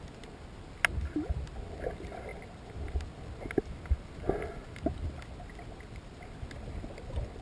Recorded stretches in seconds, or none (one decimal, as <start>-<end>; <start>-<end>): 0.0-7.4